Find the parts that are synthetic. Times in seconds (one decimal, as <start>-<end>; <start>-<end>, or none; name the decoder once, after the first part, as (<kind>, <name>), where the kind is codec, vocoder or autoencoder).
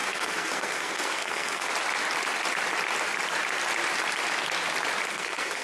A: 0.0-1.7 (codec, SNAC); 5.1-5.6